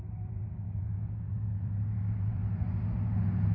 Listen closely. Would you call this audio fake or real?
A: fake